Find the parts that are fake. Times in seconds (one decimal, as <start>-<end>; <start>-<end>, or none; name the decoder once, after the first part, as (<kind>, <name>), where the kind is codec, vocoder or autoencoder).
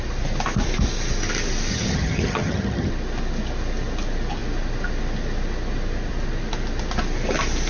1.7-2.9 (vocoder, HiFi-GAN)